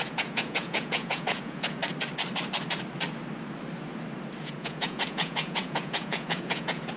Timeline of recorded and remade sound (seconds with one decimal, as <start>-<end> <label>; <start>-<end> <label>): 0.0-1.8 remade; 1.8-4.4 recorded; 4.4-7.0 remade